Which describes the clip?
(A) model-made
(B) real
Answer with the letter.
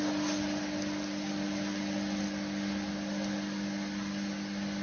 B